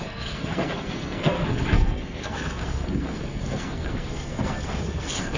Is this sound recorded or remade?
remade